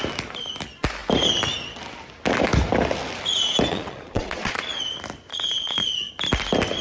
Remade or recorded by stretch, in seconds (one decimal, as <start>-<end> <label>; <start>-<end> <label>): 0.0-3.7 recorded; 3.7-4.8 remade; 4.8-5.3 recorded; 5.3-6.1 remade; 6.1-6.8 recorded